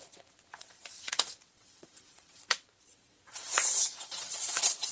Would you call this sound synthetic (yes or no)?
yes